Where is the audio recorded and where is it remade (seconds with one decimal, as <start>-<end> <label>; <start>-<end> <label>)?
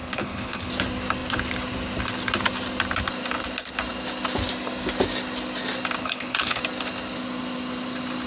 0.0-0.7 remade; 0.7-6.0 recorded; 6.0-6.6 remade; 6.6-8.3 recorded